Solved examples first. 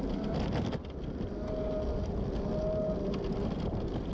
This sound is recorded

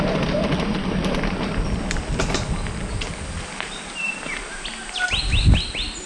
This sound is recorded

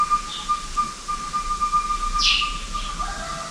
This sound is recorded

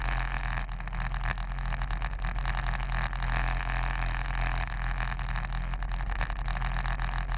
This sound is recorded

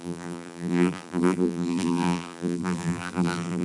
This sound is remade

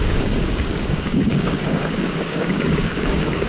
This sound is remade